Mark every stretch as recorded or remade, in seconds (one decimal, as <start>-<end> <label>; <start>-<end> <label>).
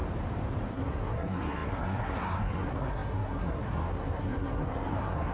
0.0-0.7 recorded; 0.7-5.3 remade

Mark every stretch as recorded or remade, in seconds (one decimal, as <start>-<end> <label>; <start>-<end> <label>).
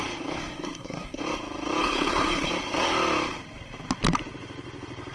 0.0-0.4 recorded; 0.4-1.2 remade; 1.2-1.8 recorded; 1.8-2.5 remade; 2.5-5.1 recorded